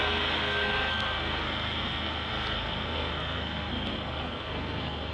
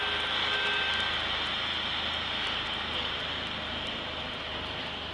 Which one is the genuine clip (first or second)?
second